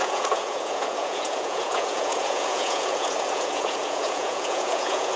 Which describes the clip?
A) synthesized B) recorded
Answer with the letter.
A